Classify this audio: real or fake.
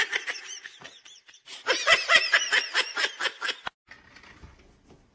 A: real